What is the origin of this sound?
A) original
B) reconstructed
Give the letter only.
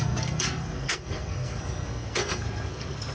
B